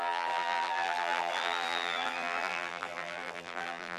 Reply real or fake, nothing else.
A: fake